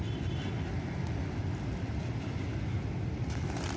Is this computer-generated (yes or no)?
no